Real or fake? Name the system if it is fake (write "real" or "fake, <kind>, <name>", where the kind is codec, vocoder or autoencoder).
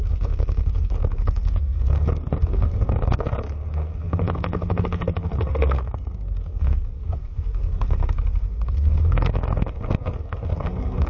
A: fake, codec, SNAC